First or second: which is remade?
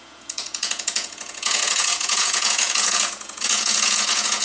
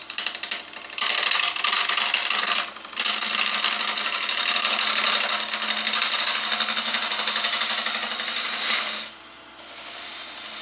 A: first